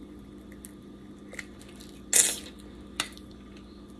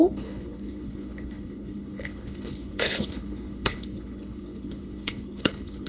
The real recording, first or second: first